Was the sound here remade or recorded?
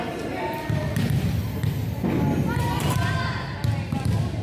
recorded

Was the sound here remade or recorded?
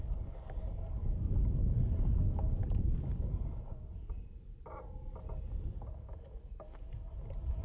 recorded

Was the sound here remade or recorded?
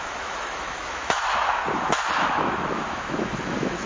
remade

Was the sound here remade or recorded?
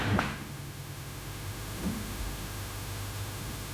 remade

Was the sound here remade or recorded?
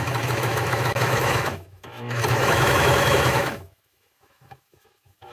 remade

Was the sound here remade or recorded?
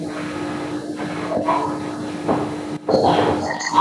recorded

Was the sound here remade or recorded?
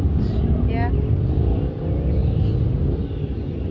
recorded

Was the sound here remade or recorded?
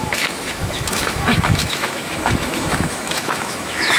remade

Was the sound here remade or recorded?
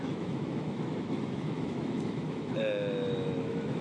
remade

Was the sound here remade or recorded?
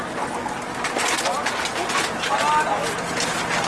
recorded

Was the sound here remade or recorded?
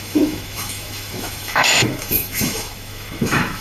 remade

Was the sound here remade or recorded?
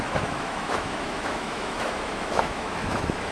remade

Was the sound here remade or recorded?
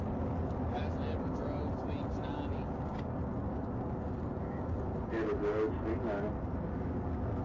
recorded